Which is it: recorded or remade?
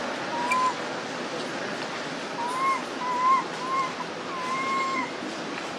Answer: recorded